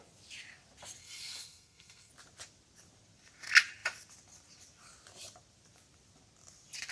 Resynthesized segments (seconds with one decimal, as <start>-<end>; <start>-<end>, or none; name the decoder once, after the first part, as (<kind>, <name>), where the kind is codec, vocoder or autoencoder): 1.0-2.1 (codec, SNAC)